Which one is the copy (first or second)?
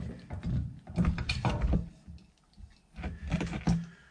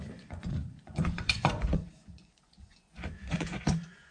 second